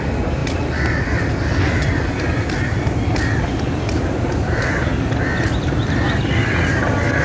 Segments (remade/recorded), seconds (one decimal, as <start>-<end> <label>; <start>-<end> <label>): 0.0-7.2 recorded